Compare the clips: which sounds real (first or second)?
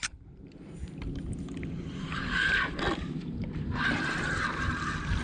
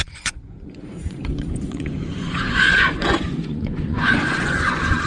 first